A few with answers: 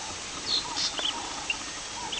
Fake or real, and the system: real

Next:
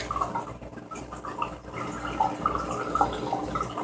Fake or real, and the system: real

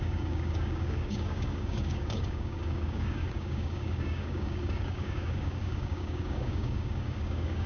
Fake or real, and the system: fake, codec, DAC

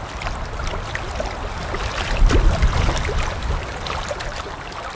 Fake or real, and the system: real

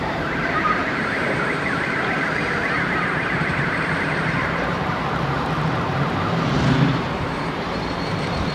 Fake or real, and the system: fake, vocoder, BigVGAN v2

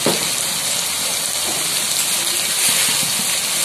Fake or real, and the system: real